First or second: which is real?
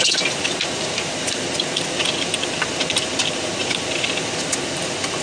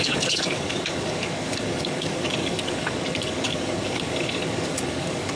first